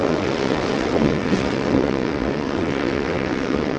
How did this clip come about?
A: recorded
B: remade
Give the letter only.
B